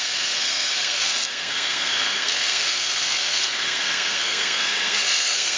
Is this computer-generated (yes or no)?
yes